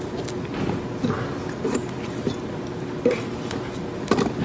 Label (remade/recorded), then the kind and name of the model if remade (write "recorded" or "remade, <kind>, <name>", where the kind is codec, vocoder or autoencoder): recorded